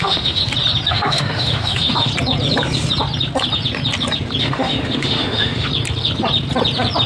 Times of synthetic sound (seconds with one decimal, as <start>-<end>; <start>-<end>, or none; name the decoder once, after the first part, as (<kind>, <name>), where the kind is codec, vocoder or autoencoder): 0.0-0.4 (autoencoder, DAC-VAE); 0.9-2.1; 4.4-5.7